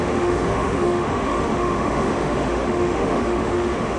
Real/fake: fake